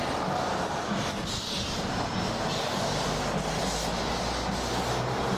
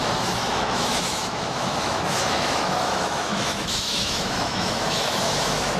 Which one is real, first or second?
first